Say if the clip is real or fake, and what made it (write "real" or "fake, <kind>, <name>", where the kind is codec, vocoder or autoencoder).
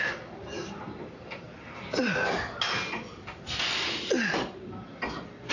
real